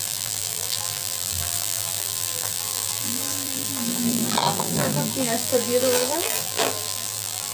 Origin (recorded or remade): remade